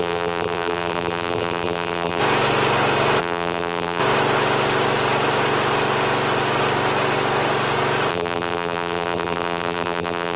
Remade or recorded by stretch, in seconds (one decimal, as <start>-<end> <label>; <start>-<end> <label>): 0.0-2.2 remade; 2.2-3.2 recorded; 3.2-4.0 remade; 4.0-8.1 recorded; 8.1-10.4 remade